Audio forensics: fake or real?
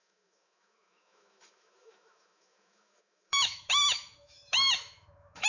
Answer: fake